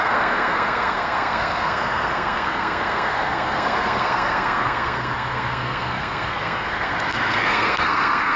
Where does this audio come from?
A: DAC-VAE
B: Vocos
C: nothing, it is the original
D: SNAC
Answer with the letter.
D